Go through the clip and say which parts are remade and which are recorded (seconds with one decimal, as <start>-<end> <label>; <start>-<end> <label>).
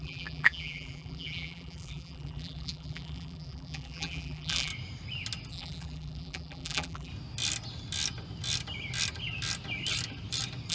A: 0.0-4.7 remade; 4.7-5.5 recorded; 5.5-7.1 remade; 7.1-10.7 recorded